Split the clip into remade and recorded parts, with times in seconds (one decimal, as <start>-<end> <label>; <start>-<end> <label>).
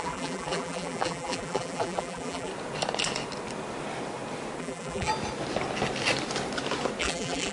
0.0-2.5 remade; 2.5-4.6 recorded; 4.6-5.1 remade; 5.1-7.0 recorded; 7.0-7.5 remade